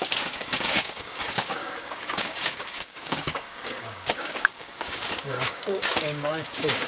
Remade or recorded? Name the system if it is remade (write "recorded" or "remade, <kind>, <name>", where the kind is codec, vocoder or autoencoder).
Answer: remade, codec, DAC